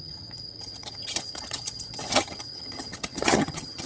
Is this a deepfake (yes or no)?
yes